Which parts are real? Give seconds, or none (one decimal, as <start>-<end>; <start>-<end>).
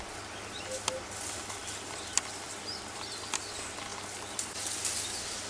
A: 0.0-1.6; 3.4-5.5